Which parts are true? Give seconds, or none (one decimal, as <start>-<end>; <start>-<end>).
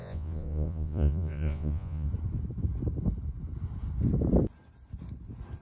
2.1-5.6